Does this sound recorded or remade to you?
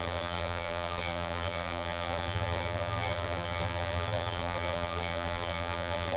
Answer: remade